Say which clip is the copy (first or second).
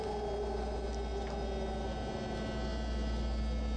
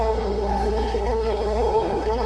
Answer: second